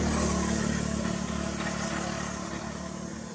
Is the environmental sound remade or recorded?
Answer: recorded